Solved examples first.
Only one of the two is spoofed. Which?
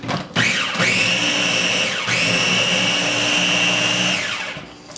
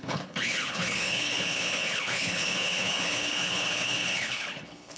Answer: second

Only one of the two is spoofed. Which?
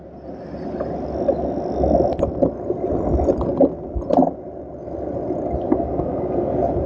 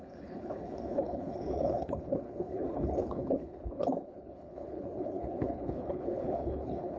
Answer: second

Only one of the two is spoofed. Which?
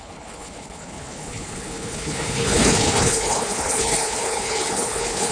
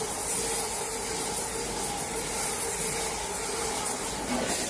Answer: first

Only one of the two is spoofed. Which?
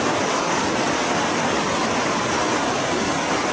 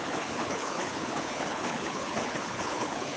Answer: second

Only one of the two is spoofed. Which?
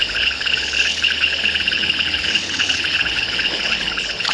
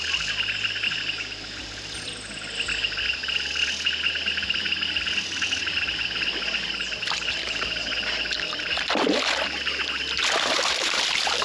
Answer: first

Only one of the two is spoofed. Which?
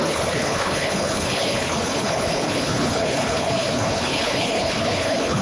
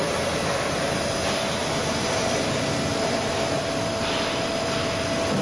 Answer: first